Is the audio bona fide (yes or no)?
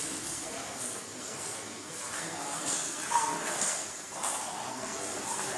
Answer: no